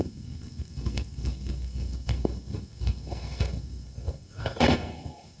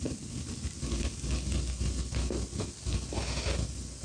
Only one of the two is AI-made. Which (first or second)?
first